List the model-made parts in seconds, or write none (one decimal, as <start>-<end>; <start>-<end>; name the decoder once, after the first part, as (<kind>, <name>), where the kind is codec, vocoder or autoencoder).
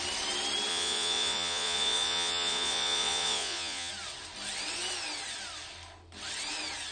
0.7-3.9 (vocoder, Vocos)